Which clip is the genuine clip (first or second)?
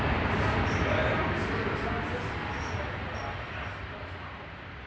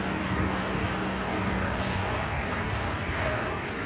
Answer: first